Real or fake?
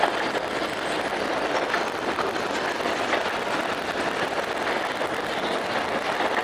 real